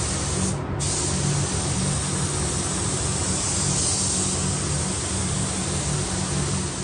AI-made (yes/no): no